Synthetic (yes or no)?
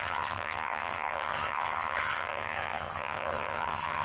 yes